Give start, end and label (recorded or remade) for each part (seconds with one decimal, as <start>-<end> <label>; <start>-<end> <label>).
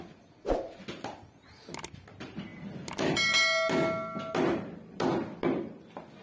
0.0-6.2 recorded